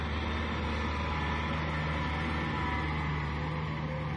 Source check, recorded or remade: recorded